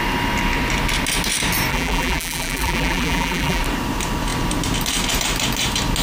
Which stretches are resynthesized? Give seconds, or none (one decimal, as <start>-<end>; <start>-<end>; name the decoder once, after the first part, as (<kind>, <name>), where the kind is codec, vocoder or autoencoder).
1.7-3.6 (vocoder, BigVGAN v2)